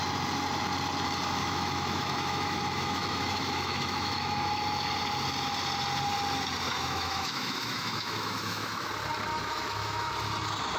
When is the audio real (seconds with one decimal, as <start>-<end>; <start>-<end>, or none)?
0.0-1.4; 4.6-6.7; 8.9-9.3; 10.1-10.8